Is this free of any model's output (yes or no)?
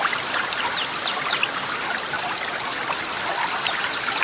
no